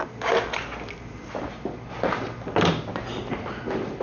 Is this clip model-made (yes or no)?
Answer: no